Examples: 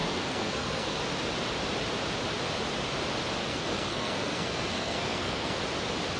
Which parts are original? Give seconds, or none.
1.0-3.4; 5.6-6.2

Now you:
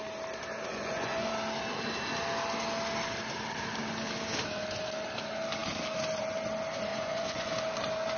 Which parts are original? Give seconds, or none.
0.0-0.7; 1.3-6.9; 7.5-8.2

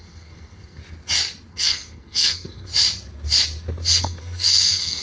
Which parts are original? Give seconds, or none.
0.8-1.5; 2.7-4.0